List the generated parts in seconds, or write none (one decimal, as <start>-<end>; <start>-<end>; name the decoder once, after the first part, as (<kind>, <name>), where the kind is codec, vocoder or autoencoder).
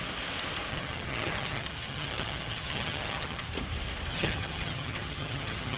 0.7-3.5 (vocoder, HiFi-GAN); 4.1-5.8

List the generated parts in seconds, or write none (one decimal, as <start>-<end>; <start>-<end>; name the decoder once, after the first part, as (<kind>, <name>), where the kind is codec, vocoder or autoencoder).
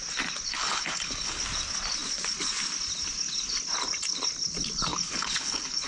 0.6-1.4 (codec, HILCodec); 4.9-5.9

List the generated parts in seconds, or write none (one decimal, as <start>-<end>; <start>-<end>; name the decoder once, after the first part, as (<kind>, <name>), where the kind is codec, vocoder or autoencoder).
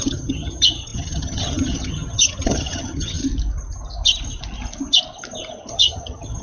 0.0-3.2 (vocoder, HiFi-GAN); 5.7-6.4